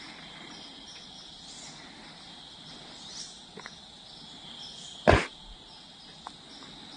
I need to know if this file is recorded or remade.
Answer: recorded